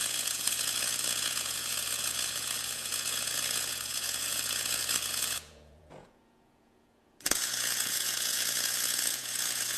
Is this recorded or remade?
remade